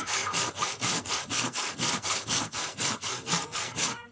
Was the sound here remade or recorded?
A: remade